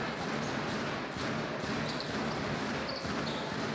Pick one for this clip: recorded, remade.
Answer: recorded